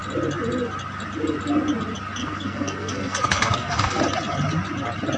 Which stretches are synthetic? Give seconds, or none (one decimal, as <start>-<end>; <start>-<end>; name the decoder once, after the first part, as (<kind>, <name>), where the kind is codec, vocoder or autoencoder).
2.2-4.0 (codec, SNAC)